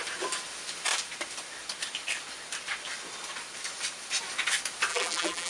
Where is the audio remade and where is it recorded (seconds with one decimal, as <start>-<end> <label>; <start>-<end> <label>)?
0.0-4.9 recorded; 4.9-5.5 remade